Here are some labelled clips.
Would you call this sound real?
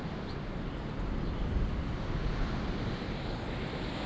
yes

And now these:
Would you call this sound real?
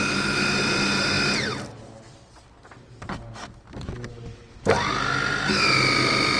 yes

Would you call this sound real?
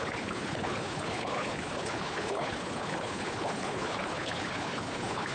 no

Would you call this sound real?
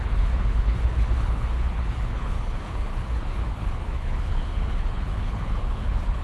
no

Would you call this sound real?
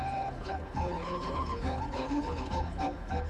no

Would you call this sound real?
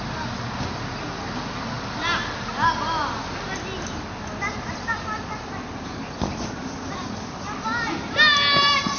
yes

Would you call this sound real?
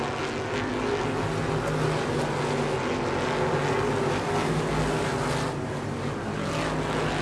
yes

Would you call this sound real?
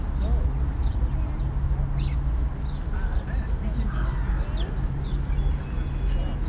yes